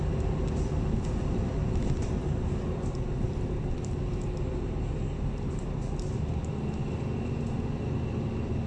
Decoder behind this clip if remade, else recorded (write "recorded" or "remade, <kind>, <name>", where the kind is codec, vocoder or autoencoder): recorded